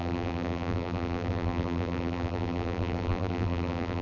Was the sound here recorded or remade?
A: remade